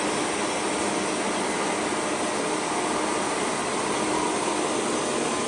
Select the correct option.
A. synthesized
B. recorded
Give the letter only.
B